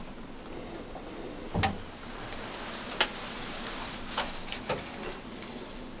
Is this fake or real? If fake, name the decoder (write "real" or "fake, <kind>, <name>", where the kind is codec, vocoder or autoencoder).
real